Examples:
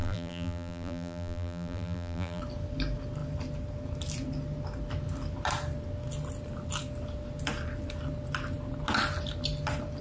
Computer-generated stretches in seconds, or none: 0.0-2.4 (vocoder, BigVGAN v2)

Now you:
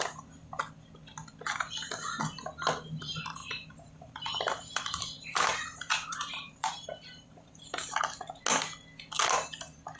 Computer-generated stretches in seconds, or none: 3.4-8.0 (vocoder, BigVGAN v2)